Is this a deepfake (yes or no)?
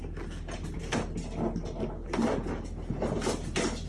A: no